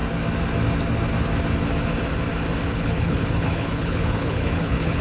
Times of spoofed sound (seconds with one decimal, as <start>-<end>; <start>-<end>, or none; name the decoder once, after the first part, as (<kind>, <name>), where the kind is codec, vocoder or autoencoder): 2.7-5.0 (codec, HILCodec)